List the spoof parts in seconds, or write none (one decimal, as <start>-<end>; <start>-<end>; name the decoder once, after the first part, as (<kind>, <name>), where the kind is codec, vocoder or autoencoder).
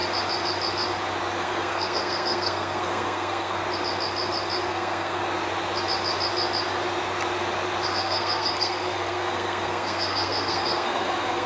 1.4-3.6 (codec, SNAC); 4.7-5.2; 7.9-11.5